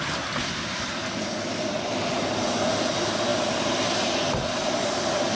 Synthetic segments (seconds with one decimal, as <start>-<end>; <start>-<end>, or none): none

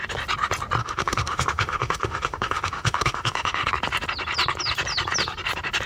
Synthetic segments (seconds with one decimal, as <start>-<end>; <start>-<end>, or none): 0.8-3.7

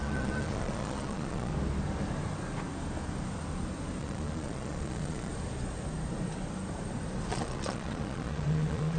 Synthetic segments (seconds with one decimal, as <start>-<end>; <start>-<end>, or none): 0.0-1.5; 4.0-5.3; 7.3-9.0

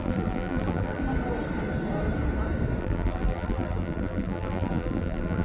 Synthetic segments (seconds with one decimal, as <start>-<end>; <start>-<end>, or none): 0.0-1.0; 2.8-5.4

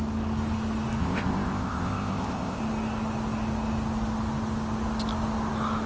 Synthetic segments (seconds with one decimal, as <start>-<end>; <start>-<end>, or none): 1.0-2.6